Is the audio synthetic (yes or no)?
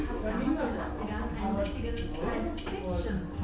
no